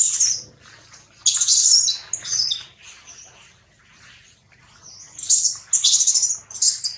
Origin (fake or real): real